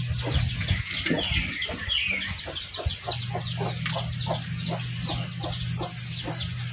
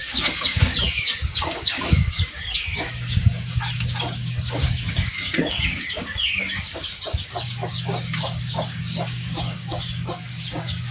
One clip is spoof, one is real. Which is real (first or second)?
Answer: first